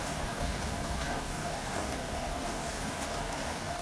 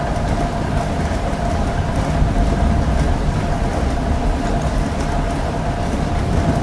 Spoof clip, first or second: first